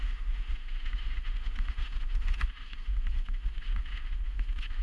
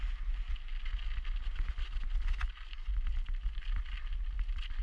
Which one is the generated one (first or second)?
first